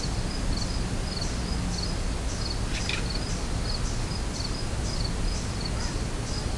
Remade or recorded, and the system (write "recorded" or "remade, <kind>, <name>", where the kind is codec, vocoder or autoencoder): recorded